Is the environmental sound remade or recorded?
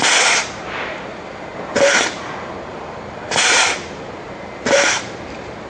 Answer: remade